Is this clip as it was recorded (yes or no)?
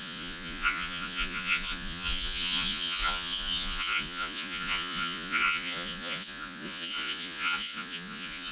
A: no